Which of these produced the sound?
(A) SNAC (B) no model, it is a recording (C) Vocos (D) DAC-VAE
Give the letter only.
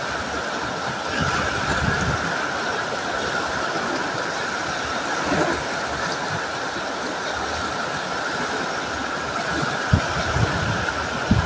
B